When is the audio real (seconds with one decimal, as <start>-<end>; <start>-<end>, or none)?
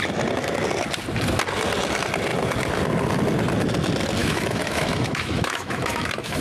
0.0-4.2